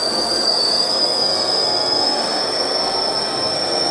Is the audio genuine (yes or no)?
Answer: no